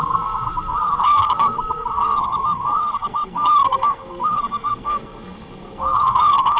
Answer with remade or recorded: remade